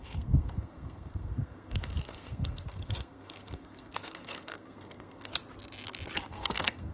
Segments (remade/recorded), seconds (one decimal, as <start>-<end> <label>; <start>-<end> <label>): 0.0-5.3 remade; 5.3-6.3 recorded; 6.3-6.9 remade